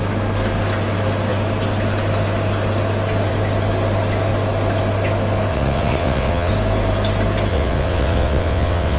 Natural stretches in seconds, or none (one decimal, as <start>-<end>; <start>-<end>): 0.0-5.5; 6.5-7.5